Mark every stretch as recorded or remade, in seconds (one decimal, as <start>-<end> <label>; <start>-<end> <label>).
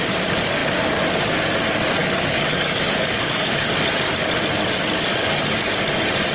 0.0-2.0 recorded; 2.0-3.7 remade; 3.7-5.1 recorded; 5.1-5.7 remade; 5.7-6.3 recorded